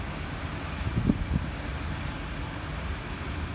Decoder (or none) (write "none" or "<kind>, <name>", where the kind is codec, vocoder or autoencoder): none